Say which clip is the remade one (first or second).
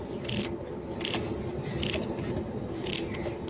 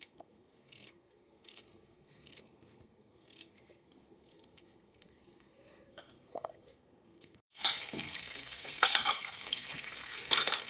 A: second